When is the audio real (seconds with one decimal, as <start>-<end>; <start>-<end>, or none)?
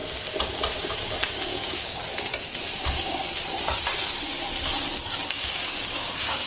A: 0.0-0.8; 2.0-5.3